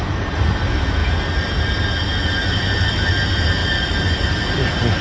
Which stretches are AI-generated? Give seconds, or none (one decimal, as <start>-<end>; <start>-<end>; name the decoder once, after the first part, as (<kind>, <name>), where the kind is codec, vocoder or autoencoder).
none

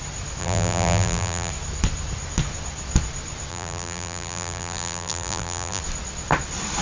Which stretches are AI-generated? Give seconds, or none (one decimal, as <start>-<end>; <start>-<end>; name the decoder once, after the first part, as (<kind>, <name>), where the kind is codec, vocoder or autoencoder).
0.4-1.5 (vocoder, BigVGAN v2); 3.5-5.8

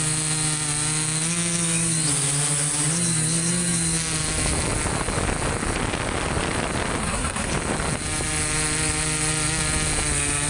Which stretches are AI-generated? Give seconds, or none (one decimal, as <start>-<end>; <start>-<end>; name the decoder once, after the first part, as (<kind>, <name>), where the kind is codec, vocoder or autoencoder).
7.0-7.5 (codec, SNAC)

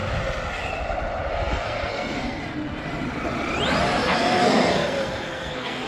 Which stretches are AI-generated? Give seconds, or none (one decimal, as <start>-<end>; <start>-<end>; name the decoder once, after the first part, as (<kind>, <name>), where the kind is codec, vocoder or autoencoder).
1.3-2.4 (codec, SNAC); 4.0-5.9

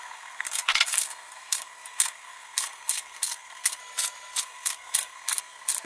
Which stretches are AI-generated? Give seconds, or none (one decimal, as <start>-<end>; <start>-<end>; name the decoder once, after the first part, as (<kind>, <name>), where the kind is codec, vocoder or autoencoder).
0.0-3.8 (codec, SNAC); 4.4-5.9

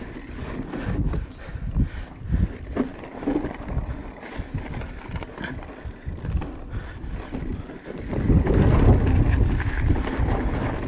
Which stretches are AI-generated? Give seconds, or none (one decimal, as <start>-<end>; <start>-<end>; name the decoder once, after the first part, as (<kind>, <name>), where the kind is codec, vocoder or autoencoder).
none